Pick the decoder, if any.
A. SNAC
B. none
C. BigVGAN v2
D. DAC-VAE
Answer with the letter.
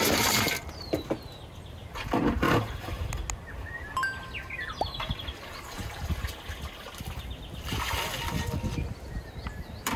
B